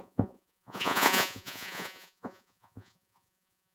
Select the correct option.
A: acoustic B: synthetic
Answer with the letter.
B